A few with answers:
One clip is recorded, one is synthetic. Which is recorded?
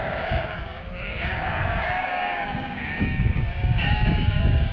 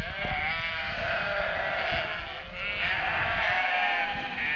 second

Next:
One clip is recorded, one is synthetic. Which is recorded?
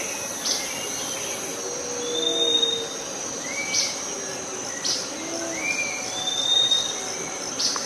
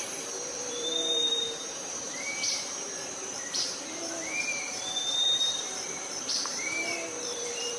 first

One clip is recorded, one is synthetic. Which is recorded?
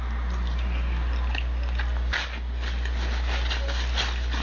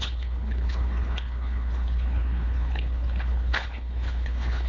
first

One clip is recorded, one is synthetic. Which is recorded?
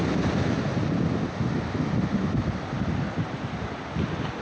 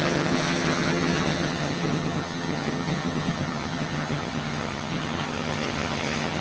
first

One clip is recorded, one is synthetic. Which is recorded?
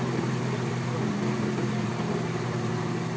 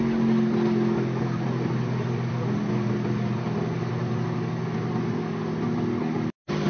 second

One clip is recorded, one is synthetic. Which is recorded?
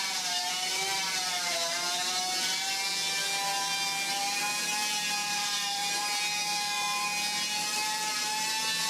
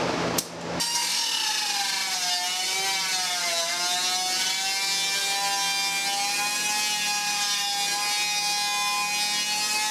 second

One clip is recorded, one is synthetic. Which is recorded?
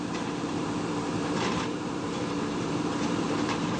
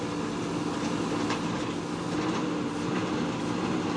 second